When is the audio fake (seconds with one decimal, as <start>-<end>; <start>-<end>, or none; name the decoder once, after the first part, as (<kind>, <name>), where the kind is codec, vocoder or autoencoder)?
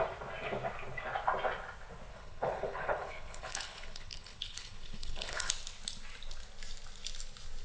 2.1-5.5 (codec, HILCodec)